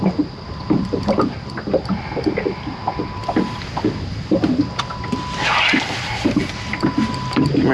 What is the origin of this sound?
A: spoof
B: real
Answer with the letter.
B